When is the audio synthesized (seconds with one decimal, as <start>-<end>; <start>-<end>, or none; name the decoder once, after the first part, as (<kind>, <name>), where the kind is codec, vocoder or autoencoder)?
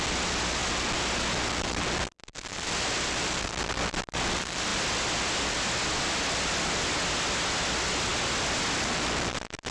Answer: none